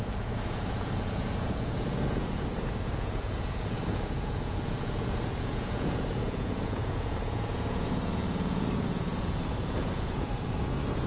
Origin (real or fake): fake